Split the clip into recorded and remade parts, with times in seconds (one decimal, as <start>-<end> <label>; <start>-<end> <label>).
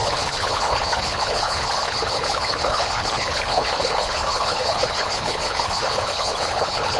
0.0-7.0 remade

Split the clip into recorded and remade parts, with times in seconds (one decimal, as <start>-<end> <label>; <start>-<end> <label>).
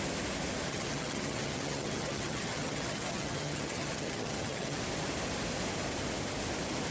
0.0-0.7 recorded; 0.7-4.8 remade; 4.8-6.9 recorded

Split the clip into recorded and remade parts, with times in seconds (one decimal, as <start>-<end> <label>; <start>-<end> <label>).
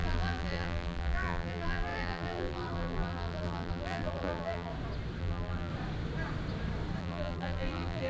0.0-4.7 remade; 4.7-5.2 recorded; 5.2-5.7 remade; 5.7-7.0 recorded; 7.0-8.1 remade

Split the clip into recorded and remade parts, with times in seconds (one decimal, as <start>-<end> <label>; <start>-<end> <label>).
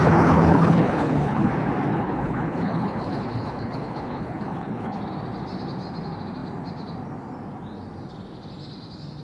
0.0-1.5 remade; 1.5-1.9 recorded; 1.9-5.0 remade; 5.0-9.2 recorded